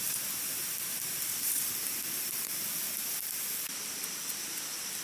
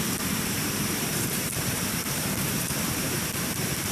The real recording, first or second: first